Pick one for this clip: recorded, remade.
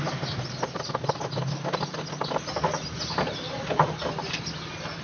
recorded